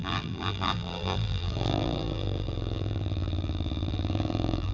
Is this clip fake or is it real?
fake